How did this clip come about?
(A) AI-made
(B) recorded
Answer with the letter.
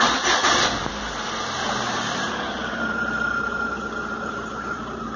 A